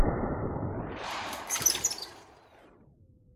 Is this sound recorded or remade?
remade